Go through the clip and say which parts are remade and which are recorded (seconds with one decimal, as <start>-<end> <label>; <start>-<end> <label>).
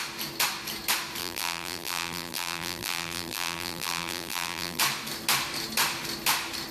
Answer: 0.0-1.2 recorded; 1.2-4.8 remade; 4.8-6.7 recorded